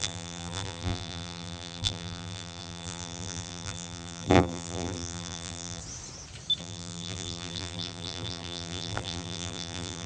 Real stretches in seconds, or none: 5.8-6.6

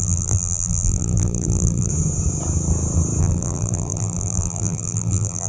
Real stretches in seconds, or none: 1.9-3.2

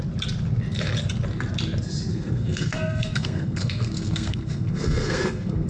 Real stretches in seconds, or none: 0.0-2.1